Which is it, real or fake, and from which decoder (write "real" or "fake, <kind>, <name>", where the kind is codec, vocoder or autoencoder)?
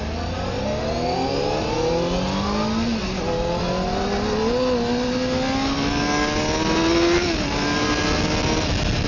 real